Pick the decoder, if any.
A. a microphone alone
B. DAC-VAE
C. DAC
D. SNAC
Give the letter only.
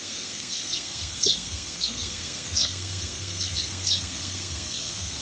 D